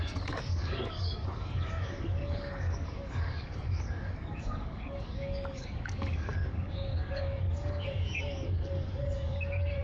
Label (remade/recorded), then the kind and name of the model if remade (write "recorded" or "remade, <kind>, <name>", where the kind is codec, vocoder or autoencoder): remade, codec, DAC